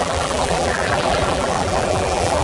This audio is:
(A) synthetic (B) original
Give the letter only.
A